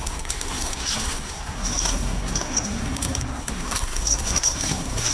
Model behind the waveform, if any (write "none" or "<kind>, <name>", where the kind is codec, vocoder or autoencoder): codec, SNAC